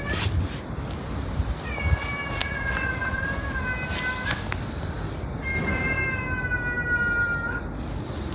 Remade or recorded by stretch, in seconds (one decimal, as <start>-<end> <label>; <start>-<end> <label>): 0.0-2.4 recorded; 2.4-3.2 remade; 3.2-8.3 recorded